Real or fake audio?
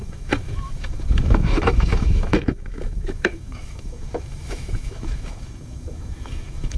fake